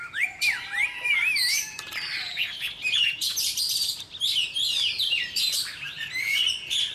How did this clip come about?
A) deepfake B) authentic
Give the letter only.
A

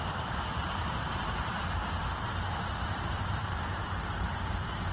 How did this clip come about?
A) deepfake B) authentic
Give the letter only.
A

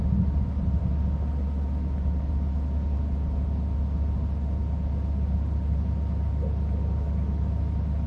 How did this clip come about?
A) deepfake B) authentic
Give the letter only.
B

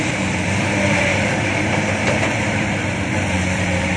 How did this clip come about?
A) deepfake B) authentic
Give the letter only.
A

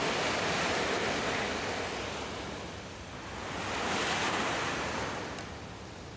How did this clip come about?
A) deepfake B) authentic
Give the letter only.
B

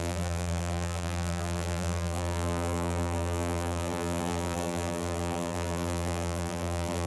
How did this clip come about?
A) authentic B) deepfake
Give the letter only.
B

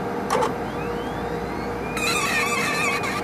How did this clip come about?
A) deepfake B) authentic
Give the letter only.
B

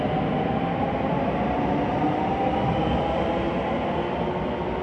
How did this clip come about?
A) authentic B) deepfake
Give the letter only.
A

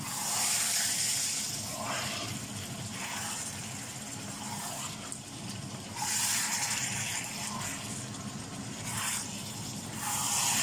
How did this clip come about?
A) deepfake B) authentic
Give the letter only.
B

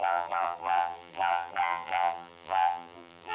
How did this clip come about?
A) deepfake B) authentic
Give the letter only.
A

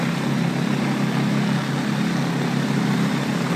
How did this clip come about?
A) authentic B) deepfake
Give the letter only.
A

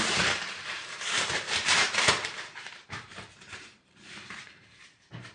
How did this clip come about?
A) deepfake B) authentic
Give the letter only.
A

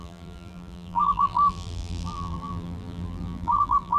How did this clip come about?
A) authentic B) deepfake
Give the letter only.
B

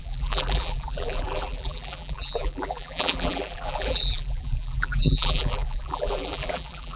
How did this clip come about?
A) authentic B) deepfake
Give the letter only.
B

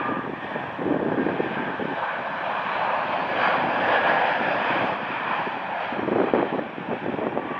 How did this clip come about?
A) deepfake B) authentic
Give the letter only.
A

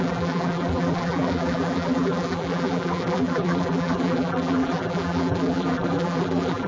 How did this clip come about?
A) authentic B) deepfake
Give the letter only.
B